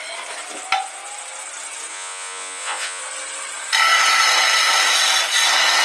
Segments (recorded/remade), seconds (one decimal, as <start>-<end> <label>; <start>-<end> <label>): 0.0-1.9 recorded; 1.9-3.0 remade; 3.0-5.8 recorded